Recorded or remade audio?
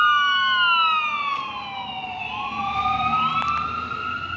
recorded